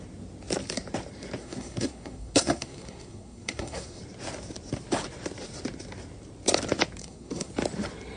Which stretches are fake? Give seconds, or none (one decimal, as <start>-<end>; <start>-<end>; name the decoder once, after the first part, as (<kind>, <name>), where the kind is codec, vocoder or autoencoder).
1.4-4.0 (codec, SNAC); 7.0-7.5